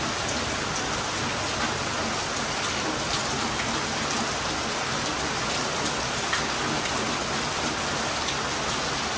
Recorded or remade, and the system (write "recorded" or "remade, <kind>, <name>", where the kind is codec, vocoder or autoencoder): recorded